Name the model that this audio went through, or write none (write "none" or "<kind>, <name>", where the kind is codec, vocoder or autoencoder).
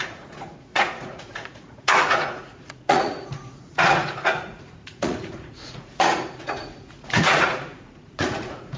vocoder, Vocos